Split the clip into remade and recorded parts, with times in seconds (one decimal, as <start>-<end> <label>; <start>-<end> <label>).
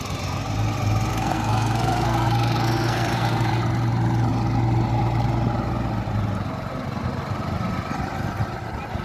0.0-1.1 recorded; 1.1-3.5 remade; 3.5-9.0 recorded